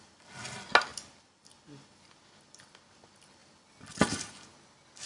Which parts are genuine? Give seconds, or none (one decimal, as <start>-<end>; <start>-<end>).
0.0-5.1

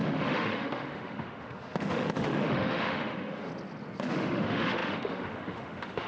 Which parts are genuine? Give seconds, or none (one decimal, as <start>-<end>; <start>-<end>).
3.5-4.0

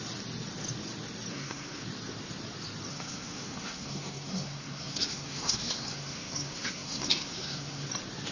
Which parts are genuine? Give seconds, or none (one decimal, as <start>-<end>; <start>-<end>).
0.0-1.3; 1.8-2.9; 7.9-8.3

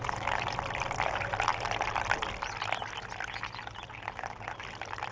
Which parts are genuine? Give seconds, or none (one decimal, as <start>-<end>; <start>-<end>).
0.0-5.1

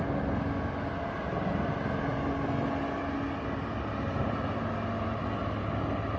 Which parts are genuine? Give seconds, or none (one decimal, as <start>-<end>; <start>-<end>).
0.0-6.2

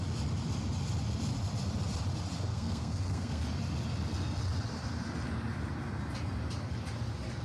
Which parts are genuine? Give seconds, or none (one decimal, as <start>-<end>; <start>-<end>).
0.0-2.5; 3.4-7.4

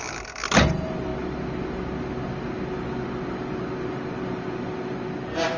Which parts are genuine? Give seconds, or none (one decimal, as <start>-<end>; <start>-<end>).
0.0-5.6

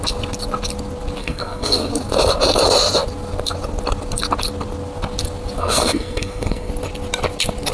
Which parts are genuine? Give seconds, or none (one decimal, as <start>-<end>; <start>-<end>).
0.0-1.2; 1.9-5.6; 6.7-7.7